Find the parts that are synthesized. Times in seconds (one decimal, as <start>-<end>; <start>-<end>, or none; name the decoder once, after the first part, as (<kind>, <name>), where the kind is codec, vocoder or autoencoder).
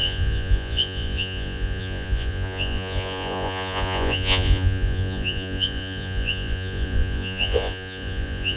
0.0-8.6 (vocoder, Vocos)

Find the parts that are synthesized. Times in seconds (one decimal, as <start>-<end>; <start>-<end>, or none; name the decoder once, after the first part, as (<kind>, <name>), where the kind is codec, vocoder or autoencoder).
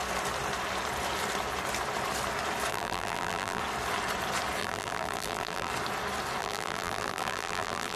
2.7-3.6 (vocoder, BigVGAN v2); 4.6-5.7; 6.4-8.0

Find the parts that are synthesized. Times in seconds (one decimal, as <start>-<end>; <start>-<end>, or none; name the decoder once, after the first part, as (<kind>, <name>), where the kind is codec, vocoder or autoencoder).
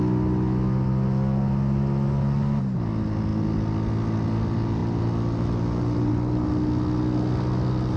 none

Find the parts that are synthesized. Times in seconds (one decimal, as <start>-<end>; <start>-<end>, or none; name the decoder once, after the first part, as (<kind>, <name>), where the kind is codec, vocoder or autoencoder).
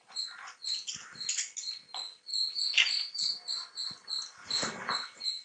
none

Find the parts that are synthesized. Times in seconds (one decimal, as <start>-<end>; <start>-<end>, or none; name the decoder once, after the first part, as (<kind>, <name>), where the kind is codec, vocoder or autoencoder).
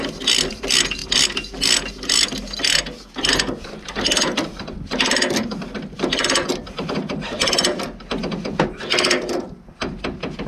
none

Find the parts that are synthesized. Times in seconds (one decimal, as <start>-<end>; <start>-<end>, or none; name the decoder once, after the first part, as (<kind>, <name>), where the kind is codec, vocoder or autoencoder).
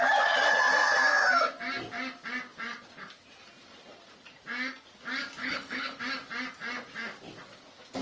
5.4-6.0 (codec, HILCodec)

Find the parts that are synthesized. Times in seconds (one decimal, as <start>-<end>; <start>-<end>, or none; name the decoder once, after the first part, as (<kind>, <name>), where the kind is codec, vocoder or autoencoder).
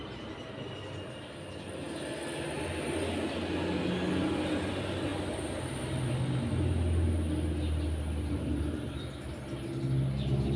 none